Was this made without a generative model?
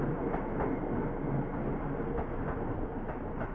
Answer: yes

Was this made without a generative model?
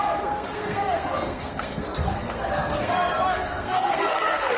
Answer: no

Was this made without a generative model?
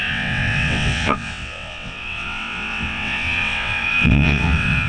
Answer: no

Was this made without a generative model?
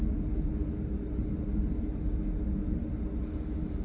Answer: yes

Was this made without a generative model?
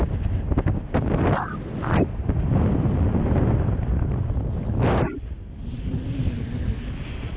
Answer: yes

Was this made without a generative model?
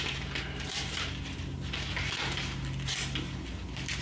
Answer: yes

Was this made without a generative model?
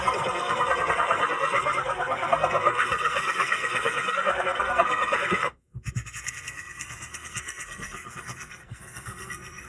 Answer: no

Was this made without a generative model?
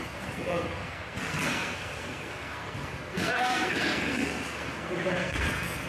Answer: no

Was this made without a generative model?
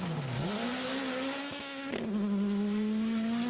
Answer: yes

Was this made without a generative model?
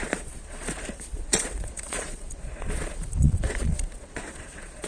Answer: no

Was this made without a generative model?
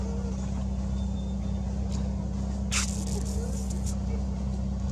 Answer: yes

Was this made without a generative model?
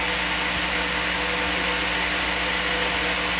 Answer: yes